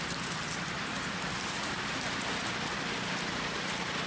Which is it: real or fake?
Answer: real